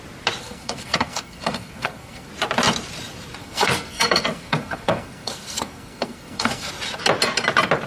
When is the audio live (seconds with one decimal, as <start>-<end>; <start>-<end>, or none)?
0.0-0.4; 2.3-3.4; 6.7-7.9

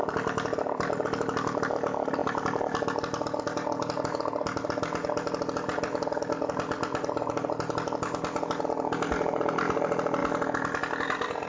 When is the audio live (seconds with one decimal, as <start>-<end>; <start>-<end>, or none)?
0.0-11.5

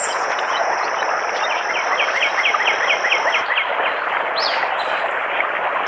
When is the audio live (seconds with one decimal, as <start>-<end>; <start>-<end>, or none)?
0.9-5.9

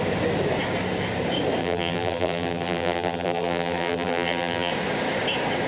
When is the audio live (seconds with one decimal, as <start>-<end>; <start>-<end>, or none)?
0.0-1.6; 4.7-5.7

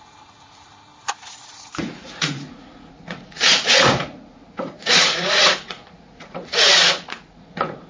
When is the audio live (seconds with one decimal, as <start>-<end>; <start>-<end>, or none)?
0.9-1.4

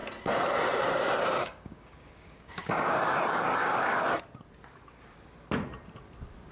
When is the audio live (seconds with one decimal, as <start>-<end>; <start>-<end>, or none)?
0.0-1.4; 2.7-3.6; 4.2-6.5